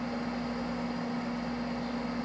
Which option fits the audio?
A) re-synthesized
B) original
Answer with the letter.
B